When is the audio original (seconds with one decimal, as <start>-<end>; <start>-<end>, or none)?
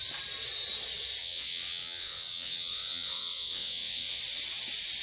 0.0-1.2; 4.2-5.0